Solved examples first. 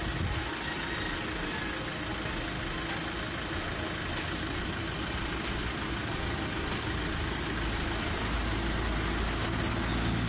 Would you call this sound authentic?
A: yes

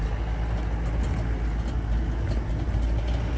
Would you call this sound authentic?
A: yes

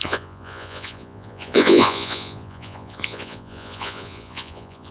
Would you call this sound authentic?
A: no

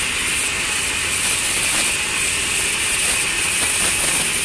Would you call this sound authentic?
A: yes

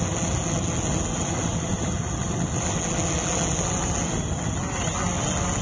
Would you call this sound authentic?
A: yes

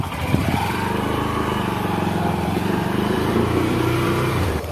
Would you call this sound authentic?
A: no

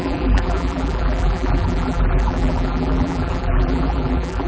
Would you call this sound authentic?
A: no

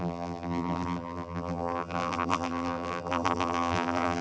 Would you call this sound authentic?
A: no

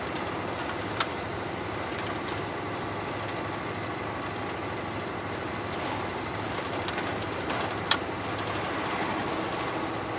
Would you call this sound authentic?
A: yes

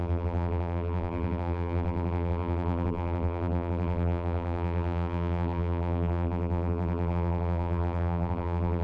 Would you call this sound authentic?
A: no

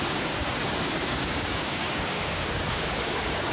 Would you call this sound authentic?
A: no